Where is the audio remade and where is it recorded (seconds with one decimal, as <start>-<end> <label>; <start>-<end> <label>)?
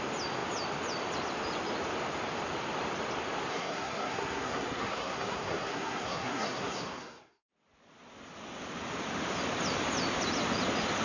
0.0-3.5 recorded; 3.5-7.5 remade; 7.5-11.0 recorded